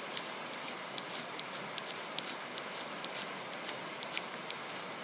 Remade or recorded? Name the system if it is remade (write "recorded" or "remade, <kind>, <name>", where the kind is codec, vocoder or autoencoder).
recorded